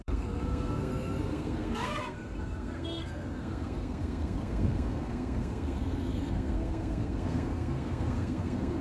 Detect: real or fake fake